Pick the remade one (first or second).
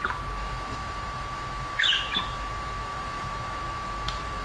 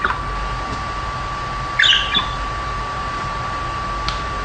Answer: first